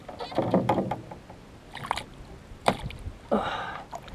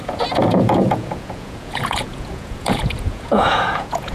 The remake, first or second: second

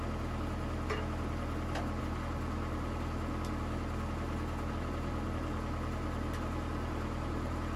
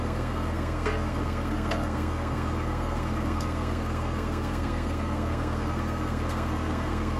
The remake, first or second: second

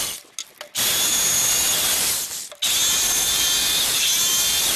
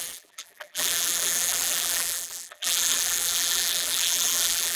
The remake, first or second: second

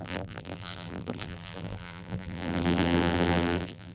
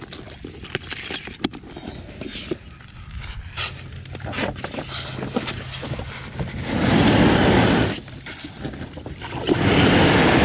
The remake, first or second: first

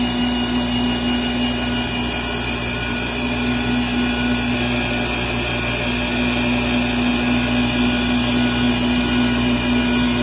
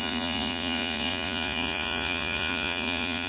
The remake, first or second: second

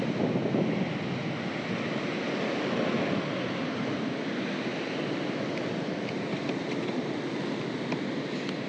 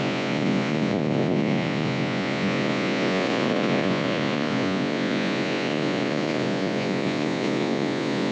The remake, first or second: second